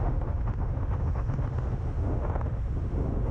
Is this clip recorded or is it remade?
remade